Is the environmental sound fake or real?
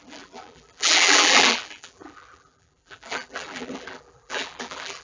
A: fake